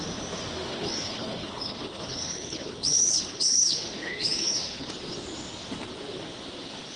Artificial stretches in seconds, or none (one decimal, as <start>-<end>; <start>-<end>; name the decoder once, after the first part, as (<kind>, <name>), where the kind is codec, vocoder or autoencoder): 0.7-4.9 (codec, HILCodec)